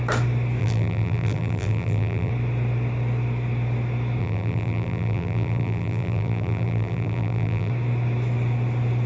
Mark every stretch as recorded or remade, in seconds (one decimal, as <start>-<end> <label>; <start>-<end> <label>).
0.0-0.6 recorded; 0.6-2.3 remade; 2.3-4.2 recorded; 4.2-7.7 remade; 7.7-9.1 recorded